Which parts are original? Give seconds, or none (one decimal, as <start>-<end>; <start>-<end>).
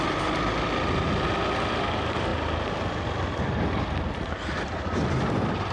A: 0.0-5.7